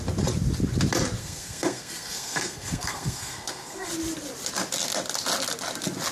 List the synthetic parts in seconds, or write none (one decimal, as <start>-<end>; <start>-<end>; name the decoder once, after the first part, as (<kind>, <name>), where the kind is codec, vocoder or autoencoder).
1.2-3.9 (codec, SNAC)